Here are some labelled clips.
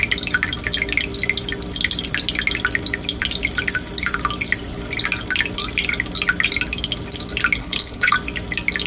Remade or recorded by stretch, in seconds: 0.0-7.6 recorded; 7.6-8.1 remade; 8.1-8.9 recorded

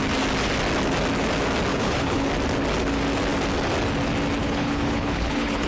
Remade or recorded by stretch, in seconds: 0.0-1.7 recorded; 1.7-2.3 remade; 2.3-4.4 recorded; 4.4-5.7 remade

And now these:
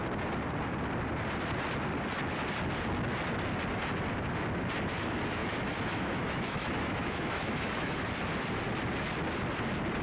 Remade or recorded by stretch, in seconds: 0.0-5.4 recorded; 5.4-8.1 remade; 8.1-10.0 recorded

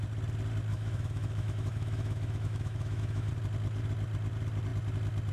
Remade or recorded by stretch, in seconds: 0.0-0.7 recorded; 0.7-3.3 remade; 3.3-5.3 recorded